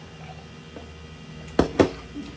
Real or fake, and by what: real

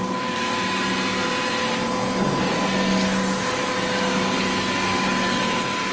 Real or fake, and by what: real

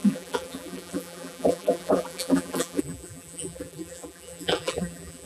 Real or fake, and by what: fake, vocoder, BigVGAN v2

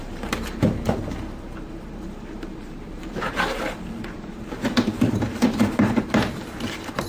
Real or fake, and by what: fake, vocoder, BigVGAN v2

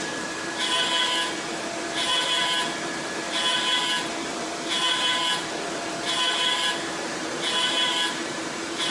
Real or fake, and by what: fake, vocoder, BigVGAN v2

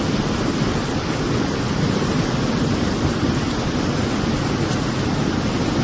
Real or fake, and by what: real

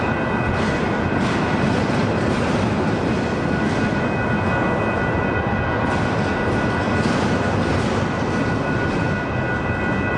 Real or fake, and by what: real